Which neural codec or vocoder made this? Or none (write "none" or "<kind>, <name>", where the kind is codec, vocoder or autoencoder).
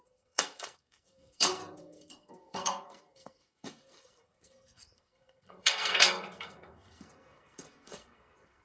codec, SNAC